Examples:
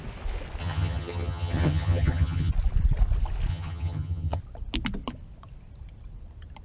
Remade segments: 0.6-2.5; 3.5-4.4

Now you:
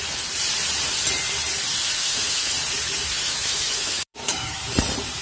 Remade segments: 1.8-2.5; 3.0-4.6

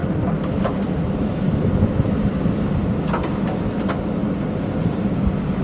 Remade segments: 0.0-4.2; 4.8-5.6

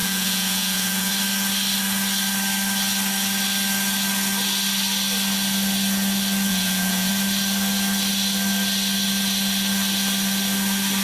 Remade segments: 0.0-1.1; 6.5-7.1

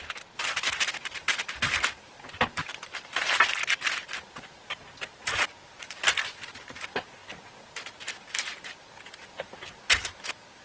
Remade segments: none

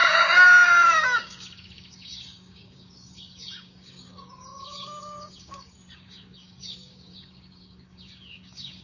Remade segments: 0.0-8.8